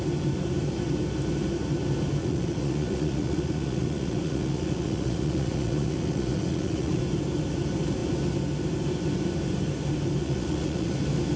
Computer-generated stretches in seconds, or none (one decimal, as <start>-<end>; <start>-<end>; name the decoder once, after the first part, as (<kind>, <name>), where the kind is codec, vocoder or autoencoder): 2.2-7.0 (vocoder, Vocos); 10.2-10.9

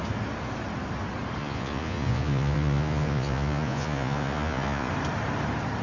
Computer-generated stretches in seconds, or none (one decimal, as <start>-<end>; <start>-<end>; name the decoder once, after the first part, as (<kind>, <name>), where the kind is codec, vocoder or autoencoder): 1.4-4.9 (vocoder, Vocos)

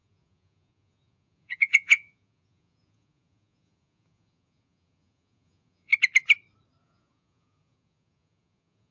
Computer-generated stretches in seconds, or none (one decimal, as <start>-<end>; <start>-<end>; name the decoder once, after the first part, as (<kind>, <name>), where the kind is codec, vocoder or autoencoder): 0.0-5.9 (vocoder, Vocos); 6.8-8.9

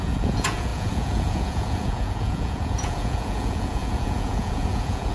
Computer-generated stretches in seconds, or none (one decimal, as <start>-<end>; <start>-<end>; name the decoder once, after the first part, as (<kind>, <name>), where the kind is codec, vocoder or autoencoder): 0.0-5.1 (vocoder, Vocos)

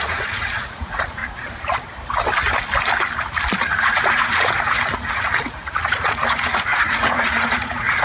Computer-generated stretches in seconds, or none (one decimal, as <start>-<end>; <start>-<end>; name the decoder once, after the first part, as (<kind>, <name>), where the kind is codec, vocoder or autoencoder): 0.0-1.2 (vocoder, Vocos); 3.7-8.0

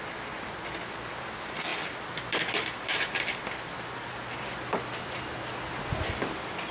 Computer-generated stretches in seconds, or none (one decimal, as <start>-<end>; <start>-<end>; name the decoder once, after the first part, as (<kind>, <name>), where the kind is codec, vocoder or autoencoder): none

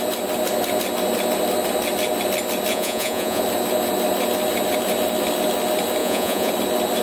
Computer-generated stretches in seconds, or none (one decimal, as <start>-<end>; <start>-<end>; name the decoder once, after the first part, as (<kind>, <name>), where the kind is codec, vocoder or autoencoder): 2.7-3.4 (vocoder, Vocos); 6.0-6.5

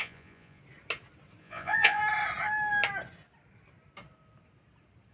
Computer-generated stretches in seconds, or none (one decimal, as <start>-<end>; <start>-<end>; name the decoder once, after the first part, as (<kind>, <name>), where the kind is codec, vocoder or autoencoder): 0.0-0.6 (vocoder, Vocos); 1.4-2.0